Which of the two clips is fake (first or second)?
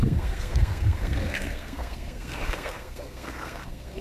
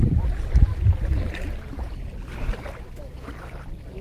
first